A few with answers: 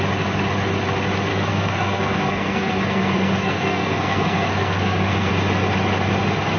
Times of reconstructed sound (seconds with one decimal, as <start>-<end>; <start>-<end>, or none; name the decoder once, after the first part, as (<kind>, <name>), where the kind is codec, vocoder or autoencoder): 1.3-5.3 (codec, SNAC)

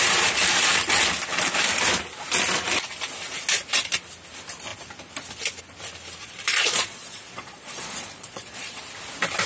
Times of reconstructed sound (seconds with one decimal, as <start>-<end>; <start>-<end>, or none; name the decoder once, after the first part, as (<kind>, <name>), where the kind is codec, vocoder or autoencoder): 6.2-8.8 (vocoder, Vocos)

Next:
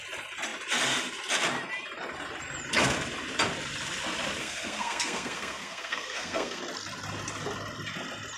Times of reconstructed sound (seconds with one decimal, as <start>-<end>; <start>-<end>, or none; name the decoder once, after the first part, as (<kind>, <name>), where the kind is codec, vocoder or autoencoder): 4.4-6.6 (codec, SNAC)